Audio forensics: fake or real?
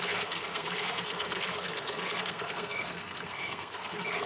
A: fake